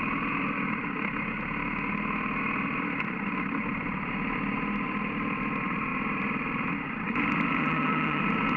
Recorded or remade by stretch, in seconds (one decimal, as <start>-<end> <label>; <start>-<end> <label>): 0.0-7.6 recorded; 7.6-8.2 remade; 8.2-8.6 recorded